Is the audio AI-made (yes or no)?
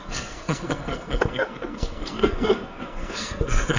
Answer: yes